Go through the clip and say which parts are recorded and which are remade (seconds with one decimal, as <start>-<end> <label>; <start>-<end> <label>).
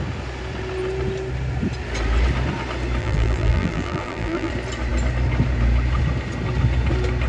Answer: 0.0-3.0 recorded; 3.0-4.5 remade; 4.5-7.3 recorded